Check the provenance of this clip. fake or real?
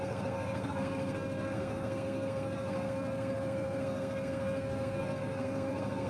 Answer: fake